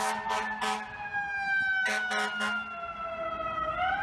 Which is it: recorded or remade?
recorded